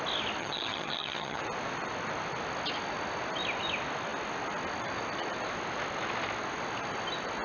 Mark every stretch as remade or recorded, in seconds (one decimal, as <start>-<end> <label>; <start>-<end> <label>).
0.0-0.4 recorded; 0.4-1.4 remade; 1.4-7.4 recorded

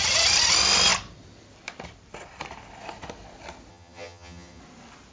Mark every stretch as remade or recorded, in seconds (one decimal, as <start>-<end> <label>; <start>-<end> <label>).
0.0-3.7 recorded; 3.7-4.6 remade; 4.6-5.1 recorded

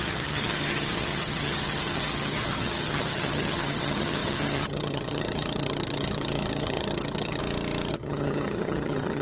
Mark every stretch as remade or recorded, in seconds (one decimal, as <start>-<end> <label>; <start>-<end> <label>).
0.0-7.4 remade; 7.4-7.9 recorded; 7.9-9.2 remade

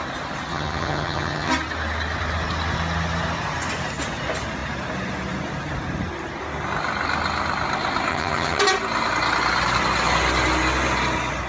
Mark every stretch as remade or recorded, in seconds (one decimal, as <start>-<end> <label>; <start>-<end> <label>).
0.0-0.5 recorded; 0.5-1.5 remade; 1.5-8.1 recorded; 8.1-8.6 remade; 8.6-11.5 recorded

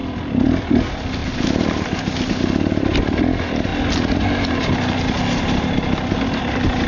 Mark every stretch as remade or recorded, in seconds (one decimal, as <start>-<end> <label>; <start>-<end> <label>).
0.0-6.9 recorded